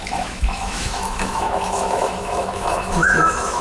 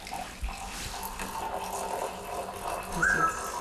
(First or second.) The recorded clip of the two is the second